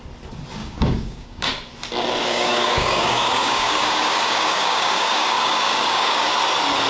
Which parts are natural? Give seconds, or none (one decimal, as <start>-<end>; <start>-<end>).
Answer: 0.0-0.6; 1.5-2.2; 6.3-6.9